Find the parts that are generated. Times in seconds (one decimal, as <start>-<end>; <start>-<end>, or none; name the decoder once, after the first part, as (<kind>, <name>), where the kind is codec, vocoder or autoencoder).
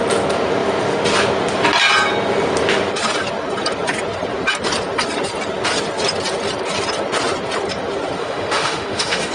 8.2-9.3 (autoencoder, DAC-VAE)